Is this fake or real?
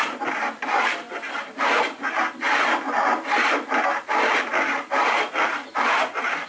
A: fake